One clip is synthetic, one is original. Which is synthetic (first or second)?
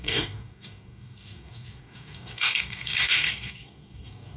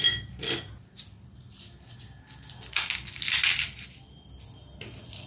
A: first